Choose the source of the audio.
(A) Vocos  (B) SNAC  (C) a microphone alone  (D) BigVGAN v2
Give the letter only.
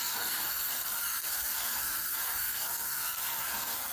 B